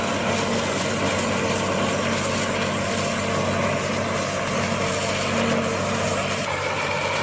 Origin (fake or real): real